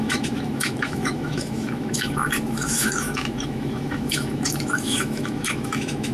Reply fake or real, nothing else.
fake